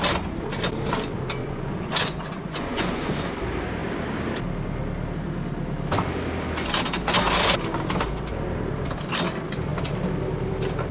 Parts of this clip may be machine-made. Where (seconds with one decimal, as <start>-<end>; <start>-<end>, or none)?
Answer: 1.4-3.3